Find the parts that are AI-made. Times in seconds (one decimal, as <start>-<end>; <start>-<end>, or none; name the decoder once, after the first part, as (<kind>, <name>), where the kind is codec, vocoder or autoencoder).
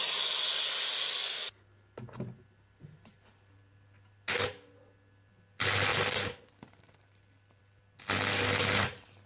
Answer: 3.1-4.3 (vocoder, BigVGAN v2); 5.9-7.6